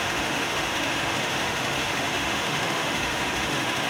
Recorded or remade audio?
remade